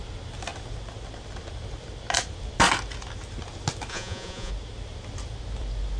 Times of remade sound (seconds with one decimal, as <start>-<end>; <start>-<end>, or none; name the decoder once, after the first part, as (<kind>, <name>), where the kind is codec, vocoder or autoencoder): 3.9-4.5 (vocoder, Vocos)